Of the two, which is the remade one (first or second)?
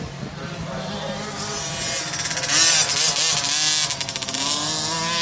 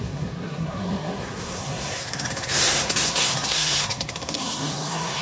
second